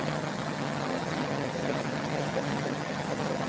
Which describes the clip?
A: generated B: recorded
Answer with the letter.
A